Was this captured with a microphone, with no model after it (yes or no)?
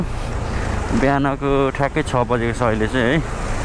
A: yes